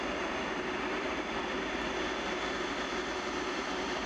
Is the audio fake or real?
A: real